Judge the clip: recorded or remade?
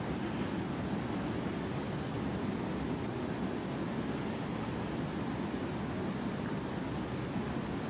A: recorded